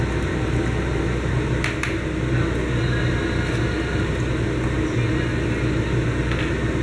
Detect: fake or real real